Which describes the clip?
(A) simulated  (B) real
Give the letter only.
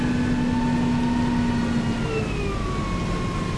B